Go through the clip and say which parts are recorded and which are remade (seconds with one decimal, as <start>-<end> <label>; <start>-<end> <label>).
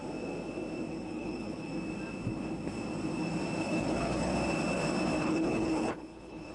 0.0-0.9 recorded; 0.9-1.7 remade; 1.7-3.6 recorded; 3.6-4.3 remade; 4.3-5.2 recorded; 5.2-6.5 remade